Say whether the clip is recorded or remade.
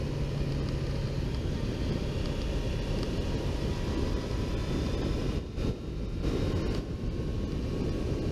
recorded